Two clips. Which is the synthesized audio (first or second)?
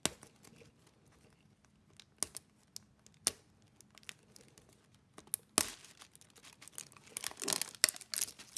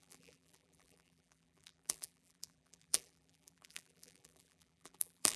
second